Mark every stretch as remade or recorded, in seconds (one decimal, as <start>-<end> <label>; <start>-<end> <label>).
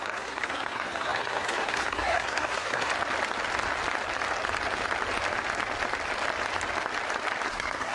0.0-2.9 remade; 2.9-7.5 recorded; 7.5-7.9 remade